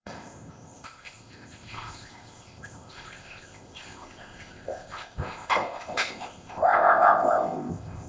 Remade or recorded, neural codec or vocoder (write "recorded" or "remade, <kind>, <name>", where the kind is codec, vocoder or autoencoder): remade, codec, ZipCodec